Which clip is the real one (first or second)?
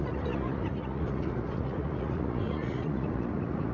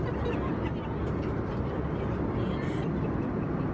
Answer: second